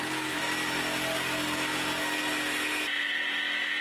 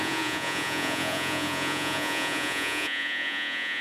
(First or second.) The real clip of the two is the first